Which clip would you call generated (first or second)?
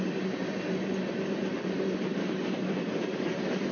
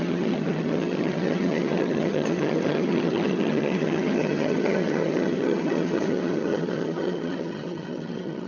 second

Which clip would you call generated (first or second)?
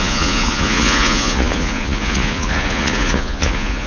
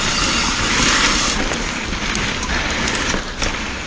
first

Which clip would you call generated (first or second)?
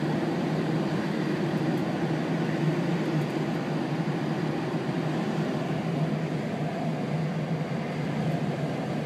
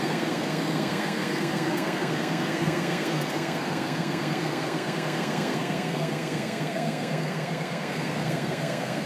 second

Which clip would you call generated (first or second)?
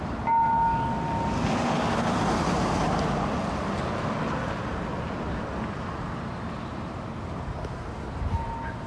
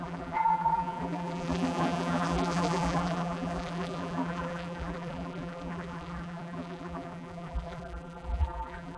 second